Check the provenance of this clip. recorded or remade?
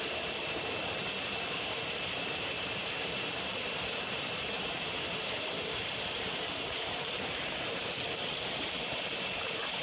remade